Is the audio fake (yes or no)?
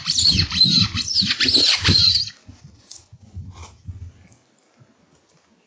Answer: yes